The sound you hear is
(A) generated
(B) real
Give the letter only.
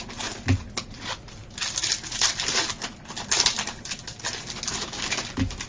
B